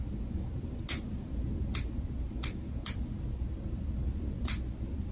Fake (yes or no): no